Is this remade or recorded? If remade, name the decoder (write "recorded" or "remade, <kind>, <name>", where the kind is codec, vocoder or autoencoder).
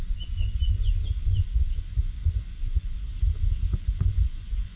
remade, vocoder, Vocos